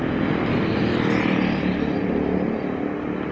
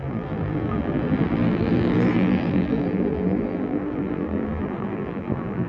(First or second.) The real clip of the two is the first